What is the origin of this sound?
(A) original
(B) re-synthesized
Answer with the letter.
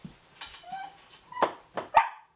A